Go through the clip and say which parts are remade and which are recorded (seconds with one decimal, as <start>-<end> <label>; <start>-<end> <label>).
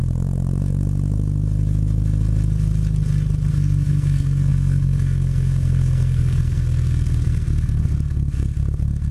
0.0-3.5 recorded; 3.5-9.1 remade